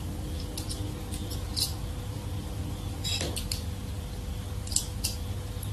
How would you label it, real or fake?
real